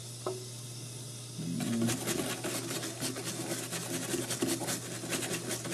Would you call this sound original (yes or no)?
yes